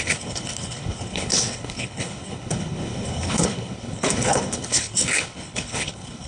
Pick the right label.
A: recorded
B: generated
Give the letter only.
B